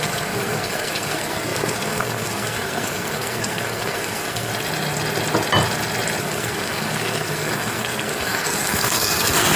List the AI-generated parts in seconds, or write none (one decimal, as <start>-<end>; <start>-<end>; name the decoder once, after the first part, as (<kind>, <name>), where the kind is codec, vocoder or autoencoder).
0.0-4.5 (codec, SNAC); 6.2-9.6